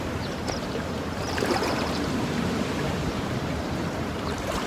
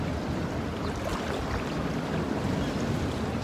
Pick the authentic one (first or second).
second